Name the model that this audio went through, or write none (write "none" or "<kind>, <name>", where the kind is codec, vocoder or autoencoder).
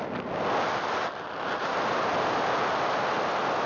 none